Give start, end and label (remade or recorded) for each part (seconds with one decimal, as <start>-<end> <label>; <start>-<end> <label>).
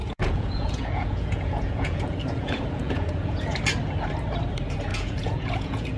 0.0-3.6 remade; 3.6-4.9 recorded; 4.9-6.0 remade